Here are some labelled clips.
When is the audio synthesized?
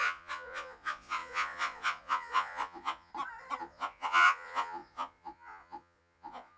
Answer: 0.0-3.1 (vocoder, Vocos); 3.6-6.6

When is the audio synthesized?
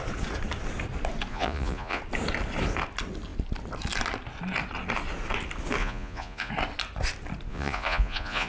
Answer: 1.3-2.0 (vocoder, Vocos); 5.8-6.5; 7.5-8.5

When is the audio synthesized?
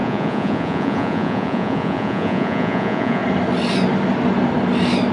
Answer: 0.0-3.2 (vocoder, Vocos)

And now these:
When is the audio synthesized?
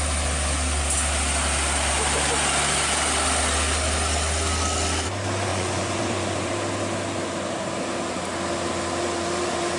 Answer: 5.5-6.5 (vocoder, Vocos)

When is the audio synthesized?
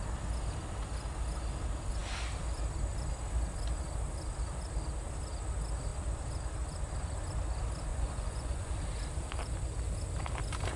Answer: 7.9-8.7 (vocoder, Vocos)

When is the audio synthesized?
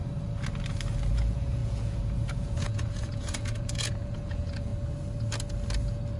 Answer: 1.1-4.7 (vocoder, Vocos)